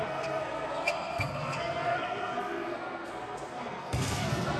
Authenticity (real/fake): fake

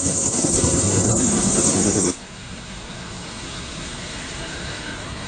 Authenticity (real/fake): fake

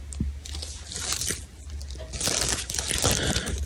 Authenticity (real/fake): real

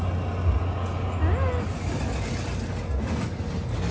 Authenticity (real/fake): real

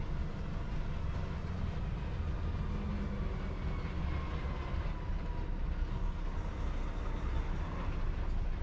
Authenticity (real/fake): real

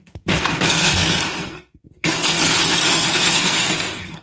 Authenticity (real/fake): fake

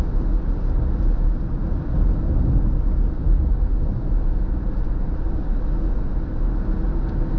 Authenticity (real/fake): real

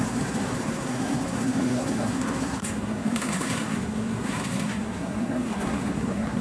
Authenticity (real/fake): fake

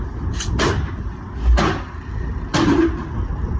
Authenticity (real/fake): real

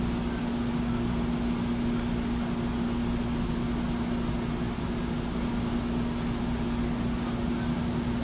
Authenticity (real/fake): real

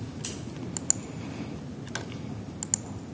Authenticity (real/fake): real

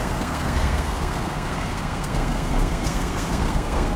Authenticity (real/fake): fake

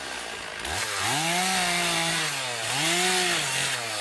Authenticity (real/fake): real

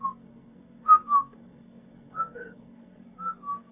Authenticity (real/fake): fake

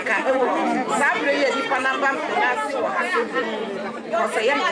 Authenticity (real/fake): real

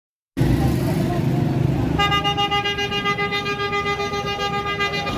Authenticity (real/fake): real